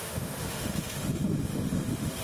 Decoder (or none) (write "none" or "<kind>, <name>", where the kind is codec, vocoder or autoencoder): autoencoder, DAC-VAE